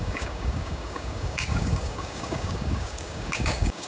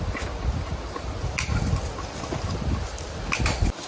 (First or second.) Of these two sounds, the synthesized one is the first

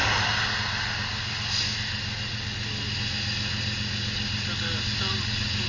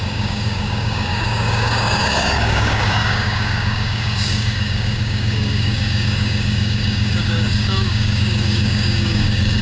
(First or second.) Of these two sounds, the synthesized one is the second